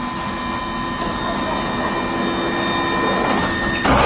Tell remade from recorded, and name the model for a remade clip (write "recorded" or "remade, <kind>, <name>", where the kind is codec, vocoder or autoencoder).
recorded